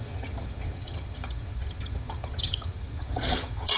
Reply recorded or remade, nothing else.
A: remade